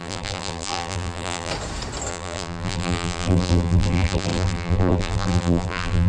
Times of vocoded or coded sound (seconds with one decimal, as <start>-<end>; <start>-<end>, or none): 0.0-1.5; 2.1-6.1